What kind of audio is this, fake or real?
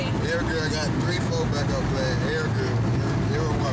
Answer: real